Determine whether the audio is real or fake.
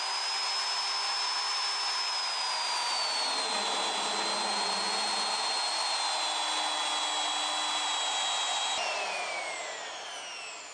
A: real